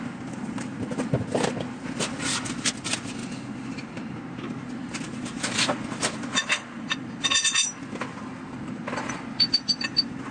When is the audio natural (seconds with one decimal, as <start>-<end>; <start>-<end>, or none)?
0.0-10.3